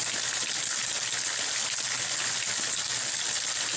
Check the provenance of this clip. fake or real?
real